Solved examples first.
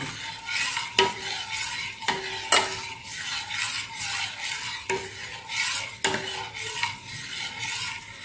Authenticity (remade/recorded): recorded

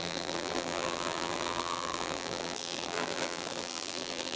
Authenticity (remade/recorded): remade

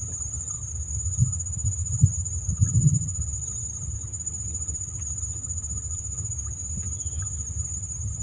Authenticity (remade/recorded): remade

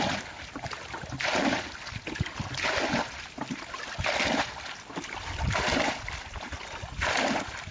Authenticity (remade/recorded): recorded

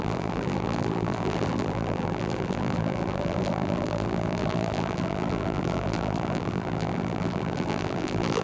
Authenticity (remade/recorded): remade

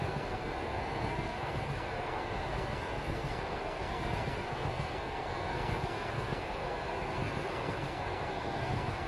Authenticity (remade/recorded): remade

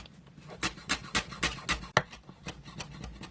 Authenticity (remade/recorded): recorded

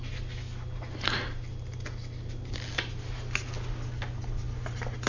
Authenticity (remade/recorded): recorded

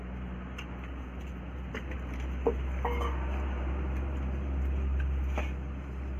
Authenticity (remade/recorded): recorded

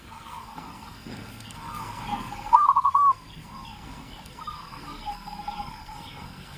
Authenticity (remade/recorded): remade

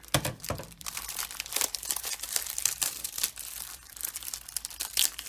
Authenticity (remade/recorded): remade